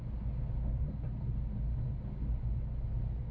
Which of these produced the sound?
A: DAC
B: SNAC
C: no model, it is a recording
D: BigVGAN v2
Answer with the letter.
C